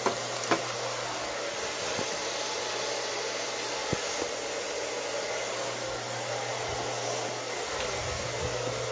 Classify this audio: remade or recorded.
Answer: recorded